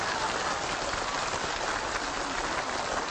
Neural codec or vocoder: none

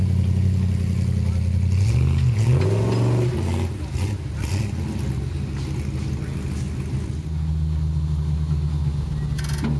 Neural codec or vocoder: none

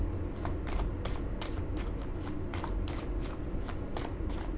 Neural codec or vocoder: none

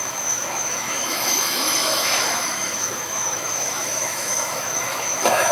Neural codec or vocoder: autoencoder, DAC-VAE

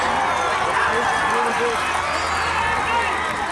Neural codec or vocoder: none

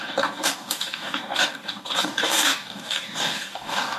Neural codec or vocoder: codec, DAC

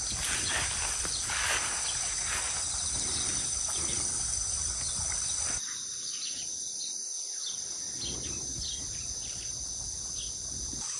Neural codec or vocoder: none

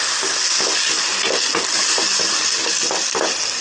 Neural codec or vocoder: none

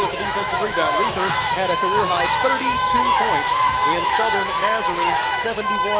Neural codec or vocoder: autoencoder, DAC-VAE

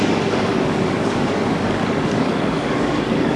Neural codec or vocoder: codec, DAC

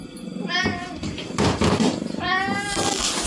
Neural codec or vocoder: none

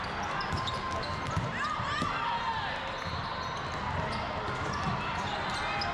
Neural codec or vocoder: none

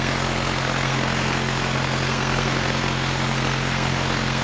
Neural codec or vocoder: codec, SNAC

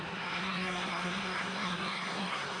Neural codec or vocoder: codec, SNAC